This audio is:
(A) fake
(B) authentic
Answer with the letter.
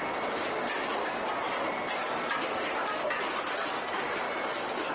B